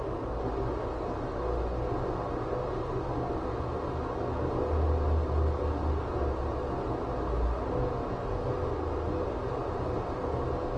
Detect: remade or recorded recorded